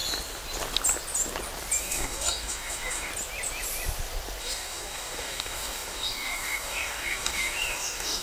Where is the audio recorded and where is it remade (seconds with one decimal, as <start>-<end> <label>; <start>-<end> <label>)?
0.0-1.8 recorded; 1.8-3.1 remade; 3.1-4.4 recorded; 4.4-8.2 remade